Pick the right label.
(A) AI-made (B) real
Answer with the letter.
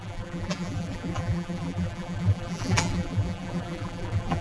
A